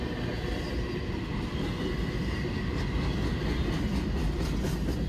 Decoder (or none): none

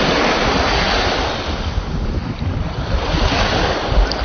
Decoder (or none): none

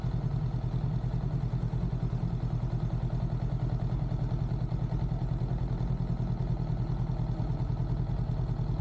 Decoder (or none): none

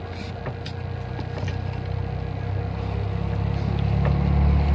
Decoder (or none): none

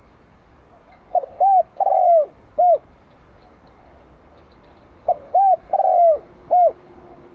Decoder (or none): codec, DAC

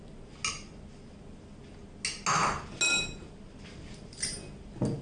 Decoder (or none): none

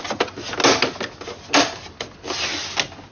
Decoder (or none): none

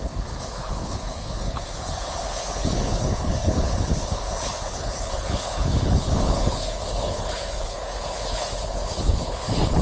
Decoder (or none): codec, HILCodec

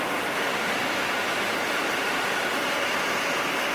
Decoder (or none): none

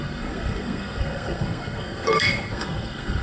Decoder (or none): codec, SNAC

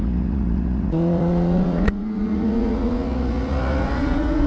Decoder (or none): vocoder, Vocos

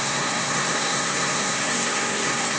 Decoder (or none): codec, SNAC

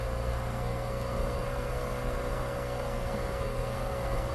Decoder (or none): codec, SNAC